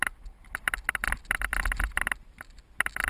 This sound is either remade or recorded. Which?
recorded